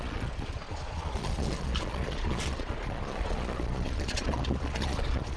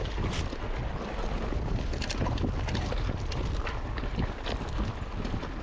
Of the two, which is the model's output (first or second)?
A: first